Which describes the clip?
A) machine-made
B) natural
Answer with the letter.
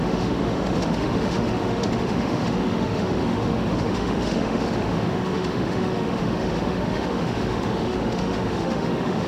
A